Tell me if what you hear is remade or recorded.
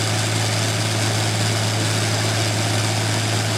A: recorded